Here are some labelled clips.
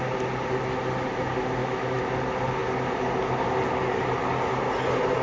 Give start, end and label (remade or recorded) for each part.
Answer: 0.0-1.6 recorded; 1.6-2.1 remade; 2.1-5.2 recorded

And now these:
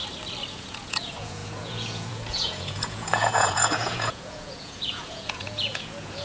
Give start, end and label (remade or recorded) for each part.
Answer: 0.0-0.5 recorded; 0.5-6.2 remade

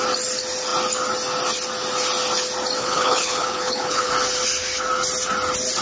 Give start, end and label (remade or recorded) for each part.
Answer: 0.0-2.8 recorded; 2.8-4.1 remade; 4.1-5.8 recorded